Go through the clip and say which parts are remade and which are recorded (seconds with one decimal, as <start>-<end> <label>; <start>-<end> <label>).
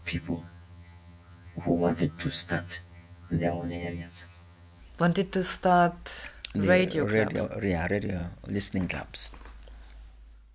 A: 0.0-4.8 remade; 4.8-10.5 recorded